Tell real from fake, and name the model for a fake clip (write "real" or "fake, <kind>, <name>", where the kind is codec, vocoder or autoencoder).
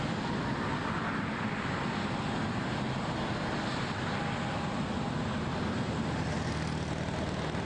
real